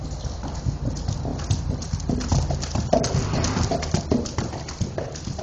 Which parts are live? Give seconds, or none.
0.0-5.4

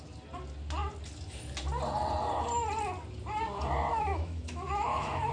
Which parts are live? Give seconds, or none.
0.0-3.9